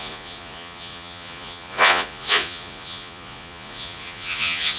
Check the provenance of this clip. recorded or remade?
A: remade